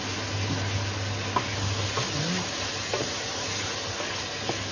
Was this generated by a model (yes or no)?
no